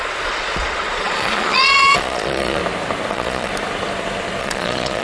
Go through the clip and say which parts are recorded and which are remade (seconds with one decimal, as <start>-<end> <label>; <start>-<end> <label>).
0.0-2.6 remade; 2.6-3.1 recorded; 3.1-3.5 remade; 3.5-4.4 recorded; 4.4-5.0 remade